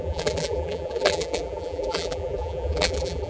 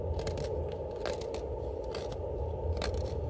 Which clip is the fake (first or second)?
first